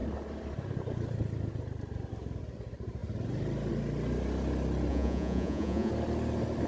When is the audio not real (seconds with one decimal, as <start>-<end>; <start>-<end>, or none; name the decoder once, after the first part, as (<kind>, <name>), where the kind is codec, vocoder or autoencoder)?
4.9-5.9 (vocoder, Vocos)